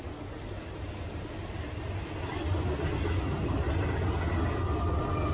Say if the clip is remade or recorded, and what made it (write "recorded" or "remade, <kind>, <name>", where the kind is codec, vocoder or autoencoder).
recorded